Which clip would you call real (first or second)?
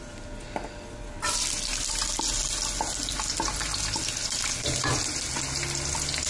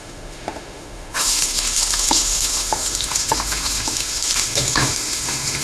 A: first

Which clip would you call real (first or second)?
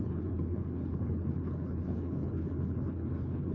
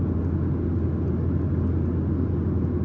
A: second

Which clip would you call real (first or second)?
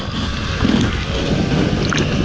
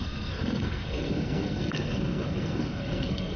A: first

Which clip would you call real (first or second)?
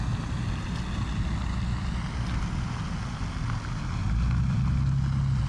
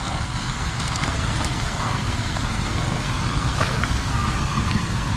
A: first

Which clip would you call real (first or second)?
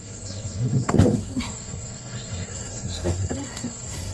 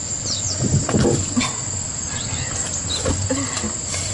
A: second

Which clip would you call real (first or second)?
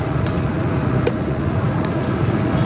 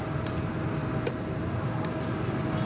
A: second